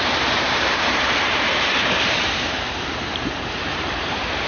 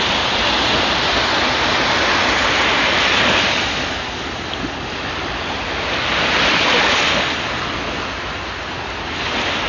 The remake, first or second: first